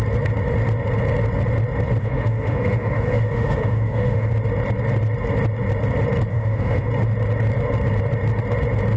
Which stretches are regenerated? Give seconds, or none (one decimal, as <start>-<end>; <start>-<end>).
2.0-4.3; 6.3-6.9